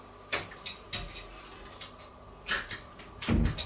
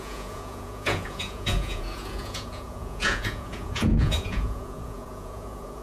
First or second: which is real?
first